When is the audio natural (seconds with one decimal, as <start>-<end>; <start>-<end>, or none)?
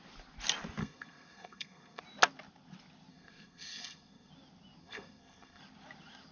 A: 0.0-0.8; 2.0-3.1; 4.3-4.8; 5.6-6.3